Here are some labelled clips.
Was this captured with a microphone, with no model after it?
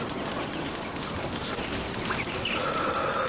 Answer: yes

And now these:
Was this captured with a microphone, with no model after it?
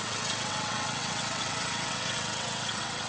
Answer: no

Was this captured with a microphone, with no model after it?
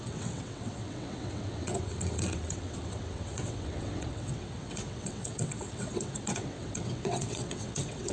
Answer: no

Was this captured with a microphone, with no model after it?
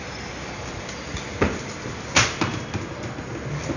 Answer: yes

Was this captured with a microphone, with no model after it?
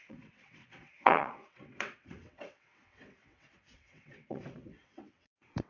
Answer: no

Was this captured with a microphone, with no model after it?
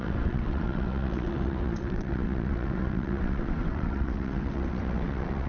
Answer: no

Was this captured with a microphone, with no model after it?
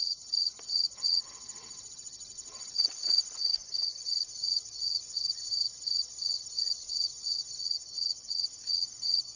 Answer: no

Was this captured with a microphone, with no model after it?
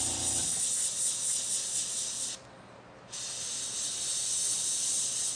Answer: yes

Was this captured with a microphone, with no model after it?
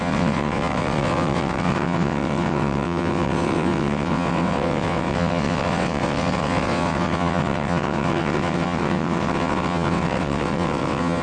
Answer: no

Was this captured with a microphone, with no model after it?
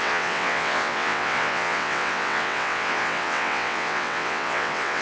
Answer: no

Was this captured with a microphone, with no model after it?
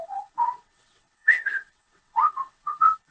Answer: no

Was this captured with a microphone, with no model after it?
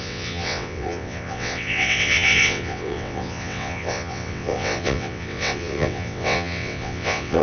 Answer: no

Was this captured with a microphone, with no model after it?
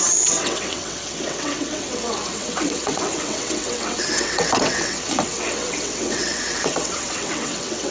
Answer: no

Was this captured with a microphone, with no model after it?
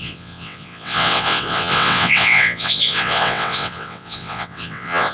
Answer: no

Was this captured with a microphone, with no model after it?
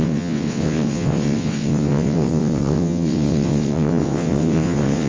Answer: no